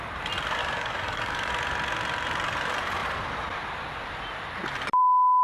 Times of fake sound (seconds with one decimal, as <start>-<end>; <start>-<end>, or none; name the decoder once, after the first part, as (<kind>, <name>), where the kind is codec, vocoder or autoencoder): 0.6-1.5 (codec, DAC)